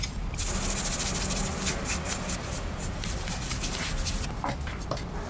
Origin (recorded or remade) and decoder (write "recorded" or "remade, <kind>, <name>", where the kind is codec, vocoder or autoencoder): recorded